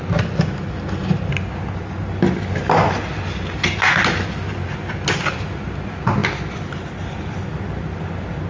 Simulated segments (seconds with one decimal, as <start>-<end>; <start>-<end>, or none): none